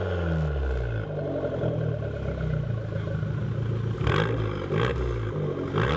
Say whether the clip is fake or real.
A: real